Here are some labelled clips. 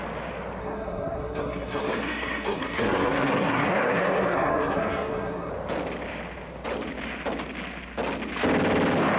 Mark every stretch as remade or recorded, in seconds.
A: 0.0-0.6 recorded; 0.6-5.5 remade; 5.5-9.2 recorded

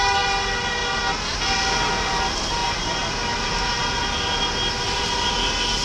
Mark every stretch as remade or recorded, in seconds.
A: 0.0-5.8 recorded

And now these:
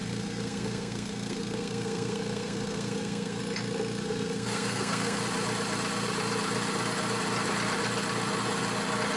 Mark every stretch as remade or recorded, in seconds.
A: 0.0-3.4 remade; 3.4-4.0 recorded; 4.0-5.2 remade; 5.2-9.2 recorded

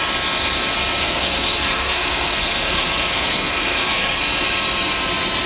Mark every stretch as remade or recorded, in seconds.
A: 0.0-1.0 recorded; 1.0-4.2 remade; 4.2-5.5 recorded